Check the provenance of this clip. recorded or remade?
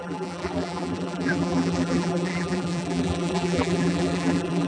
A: remade